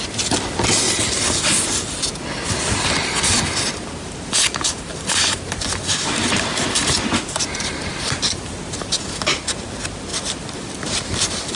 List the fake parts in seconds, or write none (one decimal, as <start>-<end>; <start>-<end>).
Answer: 4.9-9.0; 10.1-11.5